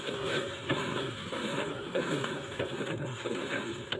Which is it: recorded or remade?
remade